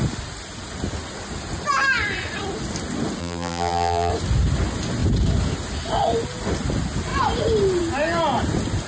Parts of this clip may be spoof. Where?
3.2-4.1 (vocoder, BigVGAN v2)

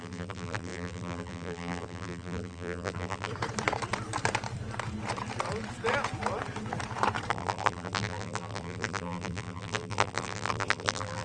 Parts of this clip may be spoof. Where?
0.0-3.3 (vocoder, BigVGAN v2); 7.3-11.2

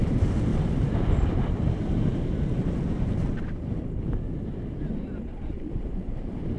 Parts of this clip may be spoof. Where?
none

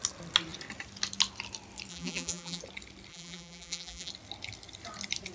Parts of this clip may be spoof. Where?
1.9-2.6 (vocoder, BigVGAN v2); 3.1-4.1

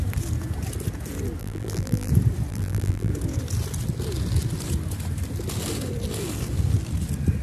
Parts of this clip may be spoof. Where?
1.4-2.1 (vocoder, BigVGAN v2); 2.5-3.1